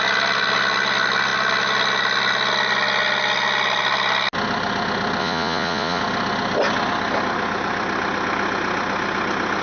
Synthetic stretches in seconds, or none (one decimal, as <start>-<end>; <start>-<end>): 5.2-6.0